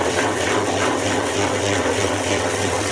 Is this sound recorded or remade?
remade